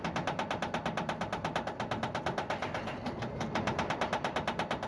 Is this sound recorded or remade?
recorded